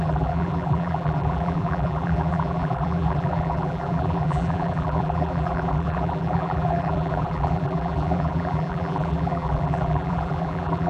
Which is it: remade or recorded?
remade